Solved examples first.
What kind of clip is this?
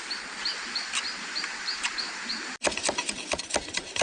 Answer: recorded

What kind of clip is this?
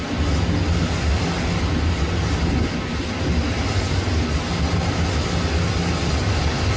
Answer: recorded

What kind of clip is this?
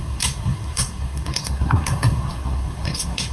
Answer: remade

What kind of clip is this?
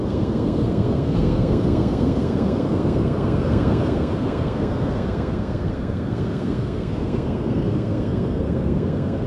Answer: remade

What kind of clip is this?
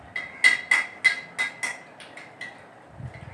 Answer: recorded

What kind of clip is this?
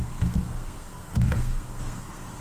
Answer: remade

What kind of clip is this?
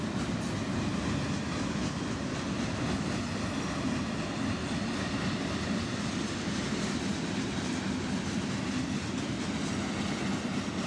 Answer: recorded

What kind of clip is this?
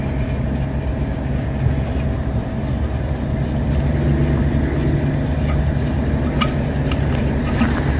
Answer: recorded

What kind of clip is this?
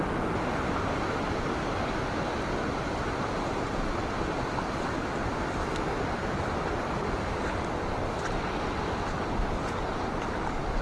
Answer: recorded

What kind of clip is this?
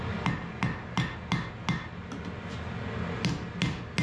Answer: recorded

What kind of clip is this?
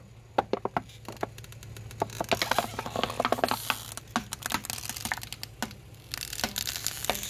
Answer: recorded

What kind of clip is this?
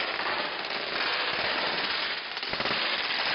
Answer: recorded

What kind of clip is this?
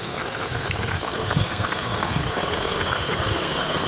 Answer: remade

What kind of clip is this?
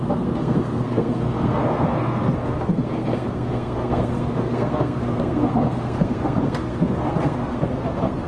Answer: remade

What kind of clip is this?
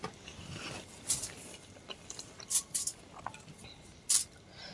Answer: recorded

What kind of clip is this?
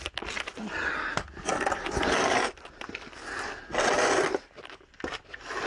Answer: recorded